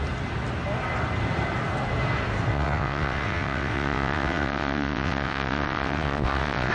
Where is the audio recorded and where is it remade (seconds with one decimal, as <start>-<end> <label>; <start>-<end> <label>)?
0.0-2.5 recorded; 2.5-6.7 remade